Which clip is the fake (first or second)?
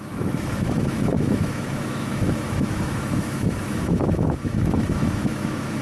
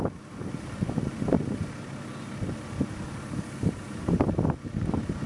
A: first